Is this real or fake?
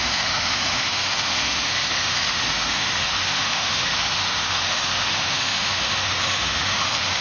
fake